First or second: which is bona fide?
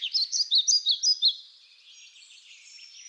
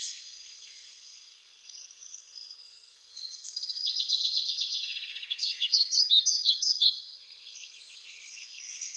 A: first